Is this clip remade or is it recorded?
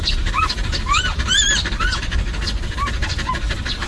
remade